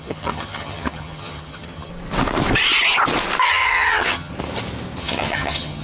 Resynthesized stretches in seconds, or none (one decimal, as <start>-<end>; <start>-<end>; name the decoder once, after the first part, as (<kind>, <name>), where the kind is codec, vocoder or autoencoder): 0.0-1.9 (vocoder, HiFi-GAN); 3.5-4.3; 5.0-5.8